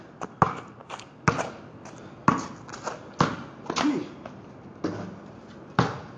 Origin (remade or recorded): recorded